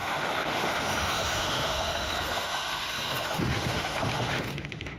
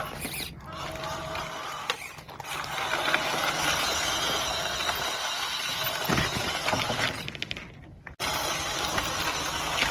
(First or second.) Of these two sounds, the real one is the second